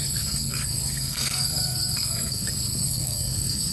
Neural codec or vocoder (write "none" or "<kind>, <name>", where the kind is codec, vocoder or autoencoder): codec, SNAC